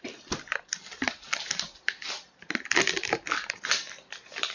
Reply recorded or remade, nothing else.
recorded